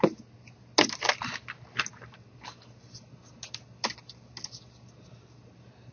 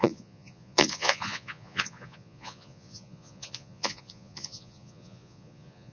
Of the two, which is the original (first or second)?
first